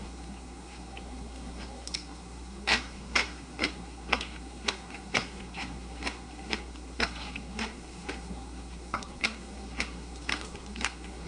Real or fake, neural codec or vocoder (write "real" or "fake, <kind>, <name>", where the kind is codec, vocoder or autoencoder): fake, codec, SNAC